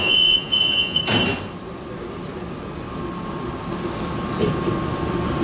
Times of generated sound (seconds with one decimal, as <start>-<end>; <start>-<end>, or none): 0.0-1.0